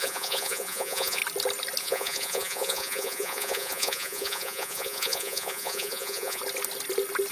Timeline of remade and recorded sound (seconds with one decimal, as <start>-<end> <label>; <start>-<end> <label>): 0.0-1.2 remade; 1.2-1.8 recorded; 1.8-6.4 remade; 6.4-7.3 recorded